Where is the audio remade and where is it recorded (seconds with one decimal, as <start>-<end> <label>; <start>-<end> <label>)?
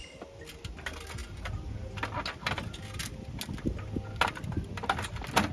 0.0-5.5 recorded